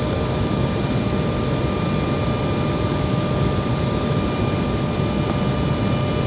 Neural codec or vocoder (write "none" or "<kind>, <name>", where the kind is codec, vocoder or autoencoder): none